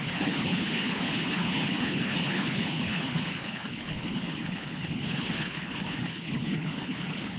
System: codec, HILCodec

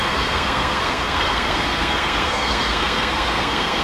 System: codec, SNAC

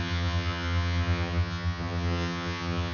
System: vocoder, HiFi-GAN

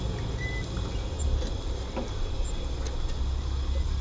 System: none